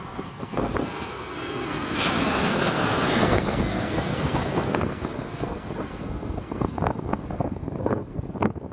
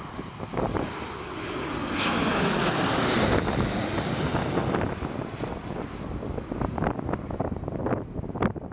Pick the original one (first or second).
second